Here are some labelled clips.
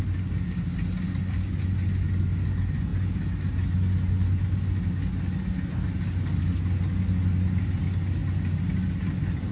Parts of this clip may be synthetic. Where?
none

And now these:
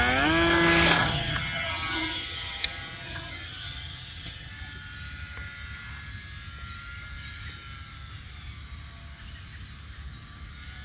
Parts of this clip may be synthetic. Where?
1.0-4.5 (vocoder, HiFi-GAN)